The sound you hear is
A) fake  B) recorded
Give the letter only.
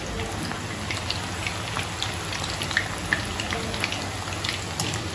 B